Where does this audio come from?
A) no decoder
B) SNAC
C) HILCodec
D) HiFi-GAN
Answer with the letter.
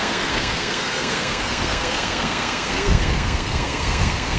B